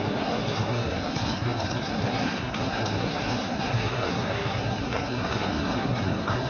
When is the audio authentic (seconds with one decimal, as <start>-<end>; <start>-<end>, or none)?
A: none